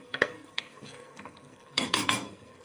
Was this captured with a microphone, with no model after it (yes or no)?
no